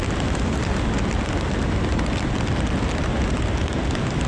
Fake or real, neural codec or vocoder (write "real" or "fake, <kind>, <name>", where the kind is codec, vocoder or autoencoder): real